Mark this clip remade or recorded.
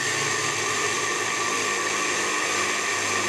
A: recorded